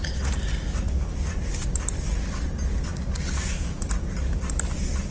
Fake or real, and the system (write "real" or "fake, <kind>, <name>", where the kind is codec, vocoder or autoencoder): real